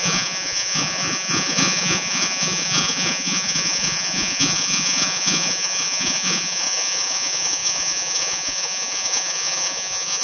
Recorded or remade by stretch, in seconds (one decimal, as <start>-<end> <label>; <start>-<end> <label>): 0.0-10.2 remade